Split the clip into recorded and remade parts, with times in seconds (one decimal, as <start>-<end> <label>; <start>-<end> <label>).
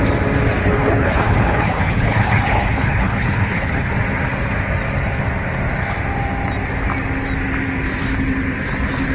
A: 0.0-0.6 recorded; 0.6-3.9 remade; 3.9-9.1 recorded